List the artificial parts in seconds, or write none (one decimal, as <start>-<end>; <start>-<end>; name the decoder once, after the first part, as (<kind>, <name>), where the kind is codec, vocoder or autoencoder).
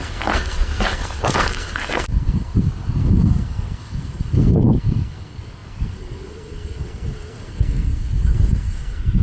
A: 0.0-9.2 (codec, SNAC)